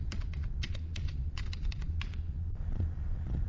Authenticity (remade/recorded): remade